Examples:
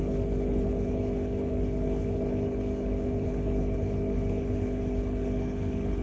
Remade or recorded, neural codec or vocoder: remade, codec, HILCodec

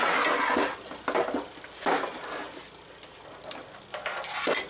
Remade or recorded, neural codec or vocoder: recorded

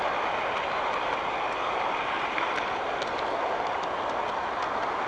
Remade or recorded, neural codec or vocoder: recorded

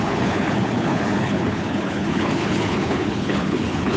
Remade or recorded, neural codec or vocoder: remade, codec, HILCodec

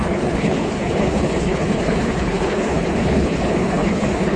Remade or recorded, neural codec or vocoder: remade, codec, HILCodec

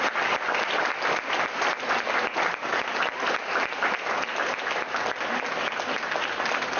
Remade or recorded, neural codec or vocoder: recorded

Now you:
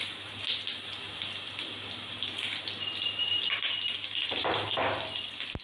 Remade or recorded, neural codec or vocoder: recorded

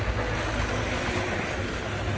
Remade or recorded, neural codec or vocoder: recorded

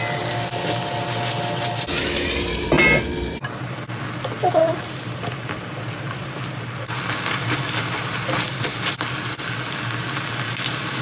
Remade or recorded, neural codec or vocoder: recorded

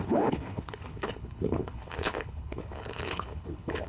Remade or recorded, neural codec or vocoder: remade, codec, HILCodec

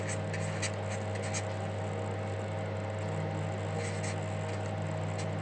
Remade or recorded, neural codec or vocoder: recorded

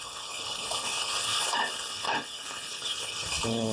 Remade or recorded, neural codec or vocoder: remade, codec, HILCodec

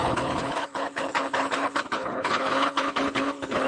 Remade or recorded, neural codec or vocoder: remade, codec, HILCodec